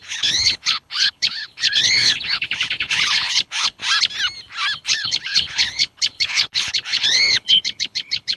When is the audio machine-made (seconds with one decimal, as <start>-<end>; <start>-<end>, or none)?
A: 0.0-3.8; 4.8-8.4